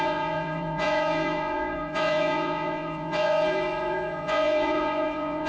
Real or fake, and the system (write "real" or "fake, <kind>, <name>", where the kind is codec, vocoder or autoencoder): fake, vocoder, Vocos